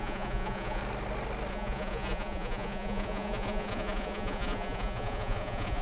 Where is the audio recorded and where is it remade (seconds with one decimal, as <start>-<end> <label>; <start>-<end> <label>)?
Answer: 0.0-0.8 remade; 0.8-1.5 recorded; 1.5-5.8 remade